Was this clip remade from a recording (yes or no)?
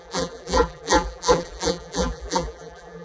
yes